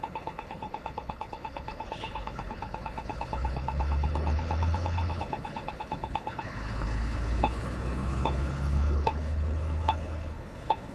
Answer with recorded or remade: remade